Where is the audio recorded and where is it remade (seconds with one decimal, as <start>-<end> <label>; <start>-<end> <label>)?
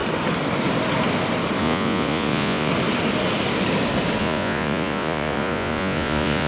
0.0-1.6 recorded; 1.6-2.7 remade; 2.7-4.2 recorded; 4.2-6.5 remade